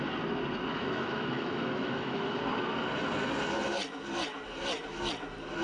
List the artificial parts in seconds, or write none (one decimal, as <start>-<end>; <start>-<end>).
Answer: 0.7-2.4